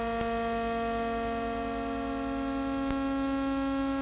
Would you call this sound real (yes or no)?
yes